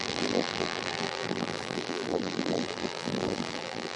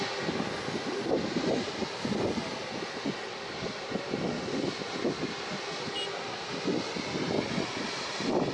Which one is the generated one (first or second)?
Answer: first